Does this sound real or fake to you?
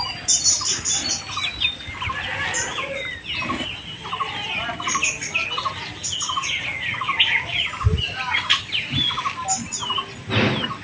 real